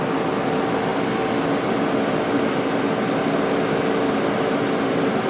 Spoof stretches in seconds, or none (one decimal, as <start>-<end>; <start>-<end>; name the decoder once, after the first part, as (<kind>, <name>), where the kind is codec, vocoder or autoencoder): none